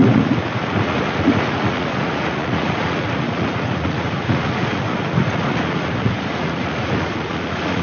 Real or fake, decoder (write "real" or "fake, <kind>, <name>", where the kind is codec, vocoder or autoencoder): fake, vocoder, Vocos